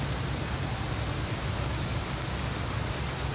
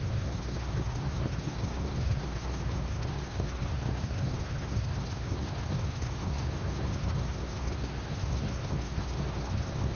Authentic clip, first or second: first